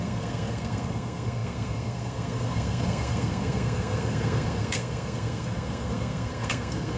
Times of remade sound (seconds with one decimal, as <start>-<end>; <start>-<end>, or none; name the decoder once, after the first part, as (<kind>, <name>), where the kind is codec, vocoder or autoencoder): 0.0-7.0 (codec, SNAC)